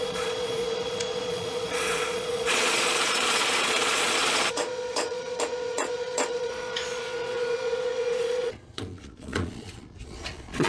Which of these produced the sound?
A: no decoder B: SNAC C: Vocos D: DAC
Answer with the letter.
C